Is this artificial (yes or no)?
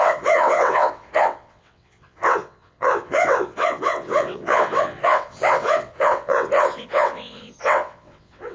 yes